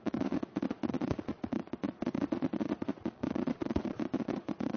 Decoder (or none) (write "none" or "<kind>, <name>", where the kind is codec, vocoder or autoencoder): vocoder, Vocos